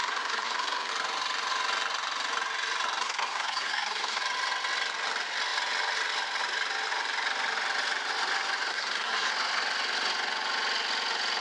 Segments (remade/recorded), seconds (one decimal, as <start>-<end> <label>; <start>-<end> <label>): 0.0-0.9 remade; 0.9-3.0 recorded; 3.0-4.2 remade; 4.2-8.7 recorded; 8.7-9.3 remade; 9.3-11.4 recorded